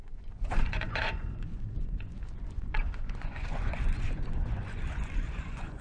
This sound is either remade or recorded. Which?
remade